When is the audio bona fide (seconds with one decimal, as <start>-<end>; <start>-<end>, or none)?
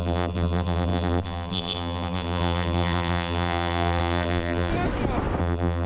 4.7-5.4